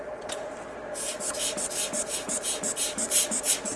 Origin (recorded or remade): remade